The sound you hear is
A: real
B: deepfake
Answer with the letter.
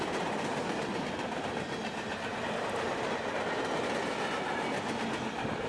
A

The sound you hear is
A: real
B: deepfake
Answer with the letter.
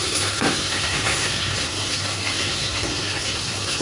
B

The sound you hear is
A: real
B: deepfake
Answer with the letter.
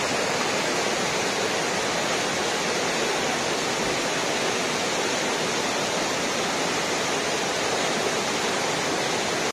A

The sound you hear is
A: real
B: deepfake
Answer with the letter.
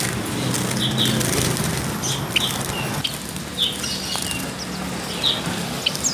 A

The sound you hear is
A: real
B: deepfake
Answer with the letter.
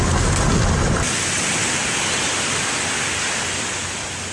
A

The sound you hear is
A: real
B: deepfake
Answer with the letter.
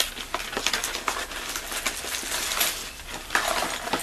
A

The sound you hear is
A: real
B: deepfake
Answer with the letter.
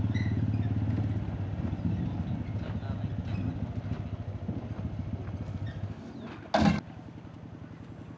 A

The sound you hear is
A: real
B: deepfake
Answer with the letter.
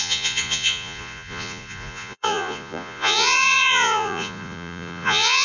B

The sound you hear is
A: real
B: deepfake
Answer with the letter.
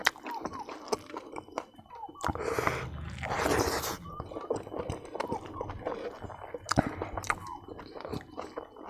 A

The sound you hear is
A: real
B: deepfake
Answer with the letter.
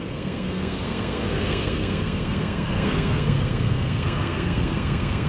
B